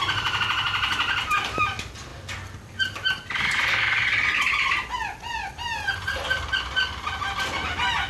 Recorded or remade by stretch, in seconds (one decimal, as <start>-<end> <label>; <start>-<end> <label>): 0.0-8.1 recorded